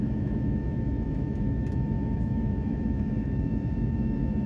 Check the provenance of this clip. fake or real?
fake